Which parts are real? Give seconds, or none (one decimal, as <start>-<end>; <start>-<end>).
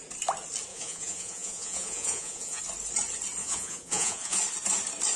0.0-0.7; 2.6-3.4; 4.4-5.2